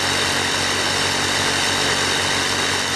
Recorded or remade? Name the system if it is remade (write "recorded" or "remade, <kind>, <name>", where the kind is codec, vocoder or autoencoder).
recorded